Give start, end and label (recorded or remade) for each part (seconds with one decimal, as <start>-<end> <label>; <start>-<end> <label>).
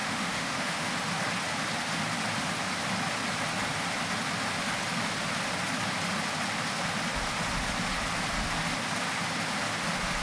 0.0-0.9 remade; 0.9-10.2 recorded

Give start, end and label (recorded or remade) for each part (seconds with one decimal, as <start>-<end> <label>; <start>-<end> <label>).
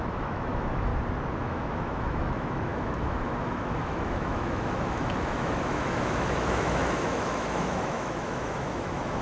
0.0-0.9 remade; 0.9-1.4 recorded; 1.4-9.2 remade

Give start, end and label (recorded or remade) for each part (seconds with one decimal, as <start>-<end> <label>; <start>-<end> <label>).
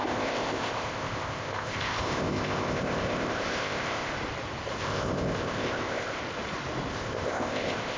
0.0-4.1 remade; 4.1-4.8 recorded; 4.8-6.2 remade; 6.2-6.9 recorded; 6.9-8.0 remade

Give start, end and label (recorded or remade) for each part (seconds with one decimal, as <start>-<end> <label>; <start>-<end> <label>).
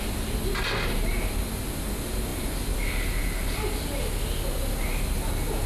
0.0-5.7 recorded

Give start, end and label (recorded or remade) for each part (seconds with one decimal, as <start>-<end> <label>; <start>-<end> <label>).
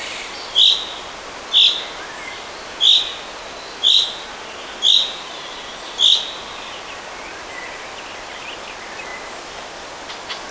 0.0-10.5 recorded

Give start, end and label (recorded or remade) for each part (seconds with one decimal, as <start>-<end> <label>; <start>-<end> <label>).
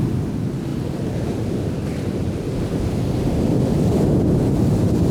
0.0-5.1 recorded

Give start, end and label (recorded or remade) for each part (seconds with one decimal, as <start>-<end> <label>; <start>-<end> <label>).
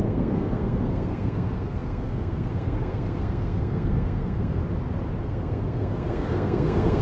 0.0-4.6 remade; 4.6-5.2 recorded; 5.2-7.0 remade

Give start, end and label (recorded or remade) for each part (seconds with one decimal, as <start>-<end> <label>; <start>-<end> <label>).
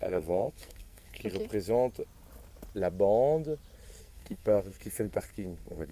0.0-1.2 remade; 1.2-4.0 recorded; 4.0-5.9 remade